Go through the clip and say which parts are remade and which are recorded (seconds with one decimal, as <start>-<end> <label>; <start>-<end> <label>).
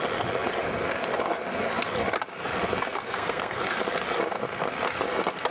0.0-2.8 recorded; 2.8-3.6 remade; 3.6-5.5 recorded